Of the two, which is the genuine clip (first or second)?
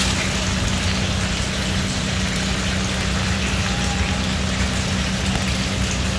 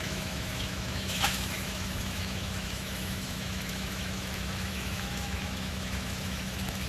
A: first